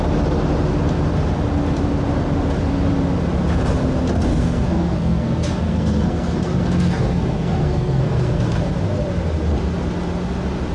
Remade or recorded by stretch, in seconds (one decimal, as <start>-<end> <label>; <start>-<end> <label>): 0.0-4.3 recorded; 4.3-8.6 remade; 8.6-10.7 recorded